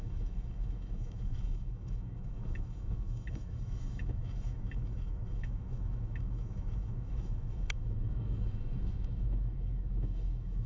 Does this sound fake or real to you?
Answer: fake